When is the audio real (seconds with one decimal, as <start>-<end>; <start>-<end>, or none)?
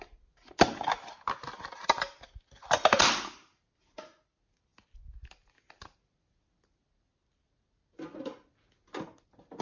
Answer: 0.0-9.6